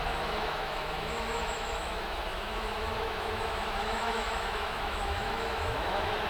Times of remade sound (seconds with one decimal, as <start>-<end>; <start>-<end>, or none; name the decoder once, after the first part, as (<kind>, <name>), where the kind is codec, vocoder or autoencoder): 0.0-6.3 (autoencoder, DAC-VAE)